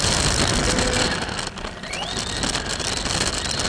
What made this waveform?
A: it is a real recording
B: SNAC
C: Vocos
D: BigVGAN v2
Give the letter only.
A